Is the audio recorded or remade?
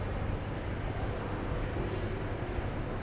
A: recorded